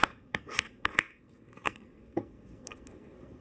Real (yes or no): no